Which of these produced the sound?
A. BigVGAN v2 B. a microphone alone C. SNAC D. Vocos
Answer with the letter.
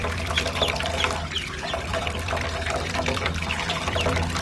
A